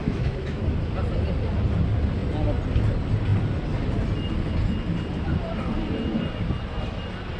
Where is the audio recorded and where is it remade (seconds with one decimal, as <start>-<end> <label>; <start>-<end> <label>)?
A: 0.0-0.6 remade; 0.6-7.4 recorded